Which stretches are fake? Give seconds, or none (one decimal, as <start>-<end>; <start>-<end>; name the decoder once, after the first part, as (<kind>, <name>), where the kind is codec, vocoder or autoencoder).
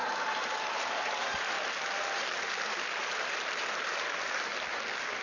0.0-4.5 (vocoder, BigVGAN v2)